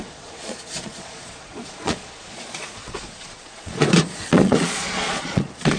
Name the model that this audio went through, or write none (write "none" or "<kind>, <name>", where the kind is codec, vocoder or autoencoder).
vocoder, Vocos